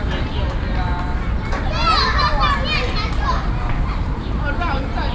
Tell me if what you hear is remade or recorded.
recorded